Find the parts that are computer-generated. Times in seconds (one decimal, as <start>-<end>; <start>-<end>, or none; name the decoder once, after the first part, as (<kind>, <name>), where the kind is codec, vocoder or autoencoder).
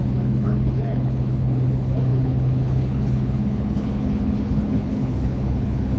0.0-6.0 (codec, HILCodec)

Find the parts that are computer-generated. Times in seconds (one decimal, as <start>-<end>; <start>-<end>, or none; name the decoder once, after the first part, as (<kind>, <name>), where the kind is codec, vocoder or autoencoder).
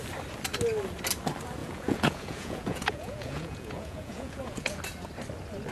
1.6-4.8 (vocoder, Vocos)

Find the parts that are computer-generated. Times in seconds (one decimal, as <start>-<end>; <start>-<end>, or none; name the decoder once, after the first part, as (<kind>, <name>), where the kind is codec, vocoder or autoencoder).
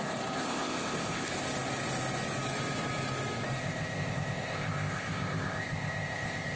0.4-1.3 (codec, ZipCodec); 3.6-6.6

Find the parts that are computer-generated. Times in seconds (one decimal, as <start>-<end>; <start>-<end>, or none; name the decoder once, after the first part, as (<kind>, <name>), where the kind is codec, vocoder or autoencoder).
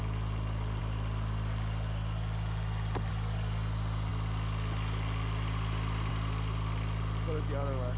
none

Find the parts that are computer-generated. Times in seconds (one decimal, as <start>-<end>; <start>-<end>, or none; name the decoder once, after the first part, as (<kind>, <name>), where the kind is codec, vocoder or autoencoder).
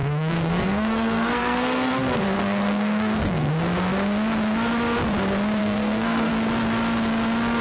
0.0-3.5 (codec, SNAC); 5.6-6.3